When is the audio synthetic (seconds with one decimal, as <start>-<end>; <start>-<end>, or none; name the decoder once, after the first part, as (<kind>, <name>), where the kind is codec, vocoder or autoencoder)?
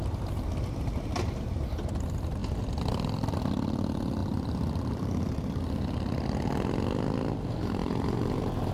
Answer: 4.2-5.6 (vocoder, BigVGAN v2); 7.8-8.7